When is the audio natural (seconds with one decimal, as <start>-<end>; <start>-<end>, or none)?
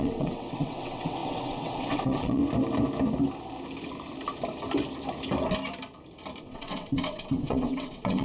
2.4-6.4